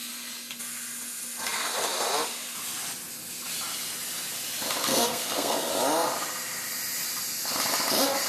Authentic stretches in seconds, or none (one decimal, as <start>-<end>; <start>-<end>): 0.0-4.9; 5.7-8.3